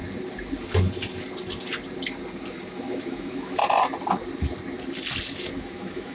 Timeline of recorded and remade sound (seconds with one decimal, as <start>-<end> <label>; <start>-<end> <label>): 0.0-2.5 recorded; 2.5-3.6 remade; 3.6-5.6 recorded; 5.6-6.1 remade